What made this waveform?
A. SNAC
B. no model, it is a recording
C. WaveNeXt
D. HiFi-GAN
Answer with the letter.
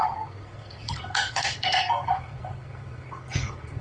A